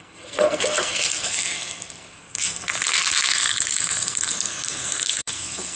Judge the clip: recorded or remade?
remade